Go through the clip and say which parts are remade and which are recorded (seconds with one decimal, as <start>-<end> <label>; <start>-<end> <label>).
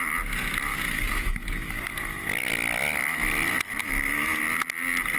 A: 0.0-0.7 recorded; 0.7-2.5 remade; 2.5-3.8 recorded; 3.8-4.4 remade; 4.4-5.2 recorded